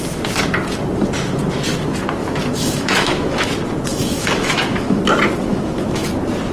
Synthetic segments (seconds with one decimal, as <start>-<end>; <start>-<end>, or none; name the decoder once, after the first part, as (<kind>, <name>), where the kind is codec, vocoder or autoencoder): 2.2-3.5 (autoencoder, DAC-VAE); 3.9-5.0; 5.5-6.1